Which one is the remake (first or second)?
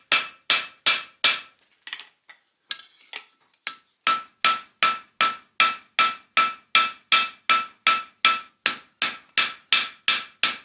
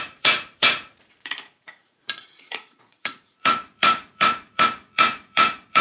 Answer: second